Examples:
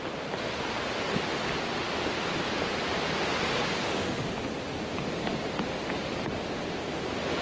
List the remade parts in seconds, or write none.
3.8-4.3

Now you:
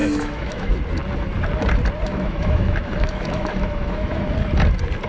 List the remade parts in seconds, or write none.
0.0-0.7; 2.1-4.2

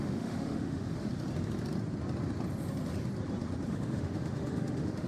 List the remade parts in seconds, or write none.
0.0-1.1; 3.7-5.1

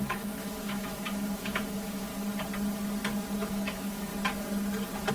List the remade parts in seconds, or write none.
0.0-2.1; 3.5-4.1

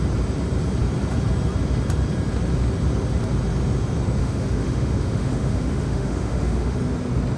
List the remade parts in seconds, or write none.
4.2-6.8

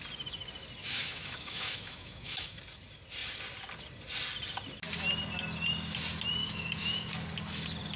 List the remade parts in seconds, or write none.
0.8-2.6; 6.4-7.1